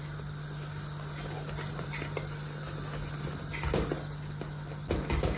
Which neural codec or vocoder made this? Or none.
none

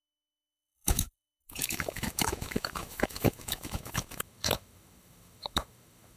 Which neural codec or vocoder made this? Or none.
autoencoder, DAC-VAE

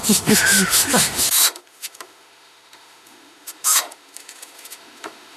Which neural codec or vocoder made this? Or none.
autoencoder, DAC-VAE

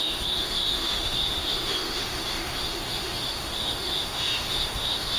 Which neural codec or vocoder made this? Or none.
autoencoder, DAC-VAE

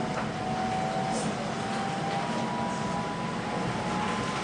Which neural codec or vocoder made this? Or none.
none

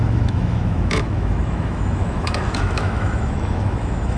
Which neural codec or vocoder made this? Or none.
autoencoder, DAC-VAE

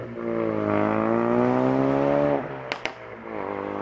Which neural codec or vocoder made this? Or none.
none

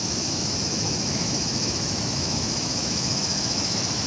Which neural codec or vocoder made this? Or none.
autoencoder, DAC-VAE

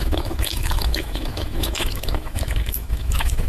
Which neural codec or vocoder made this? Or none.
autoencoder, DAC-VAE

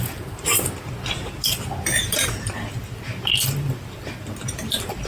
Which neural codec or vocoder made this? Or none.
none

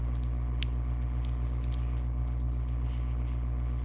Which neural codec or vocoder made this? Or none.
none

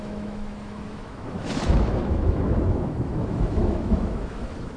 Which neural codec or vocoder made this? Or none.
autoencoder, DAC-VAE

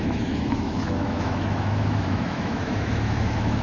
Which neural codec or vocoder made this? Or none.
autoencoder, DAC-VAE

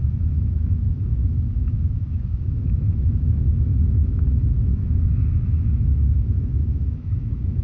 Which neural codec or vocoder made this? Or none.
autoencoder, DAC-VAE